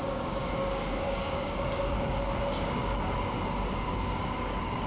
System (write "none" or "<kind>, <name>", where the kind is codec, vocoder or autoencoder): codec, DAC